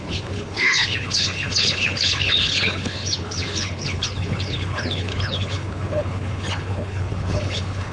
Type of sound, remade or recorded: remade